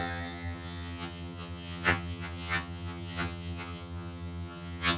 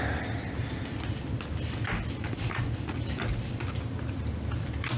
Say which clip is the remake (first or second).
first